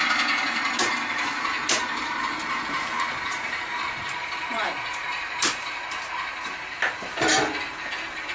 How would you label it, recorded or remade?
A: remade